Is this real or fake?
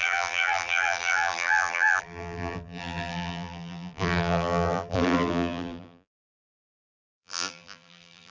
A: fake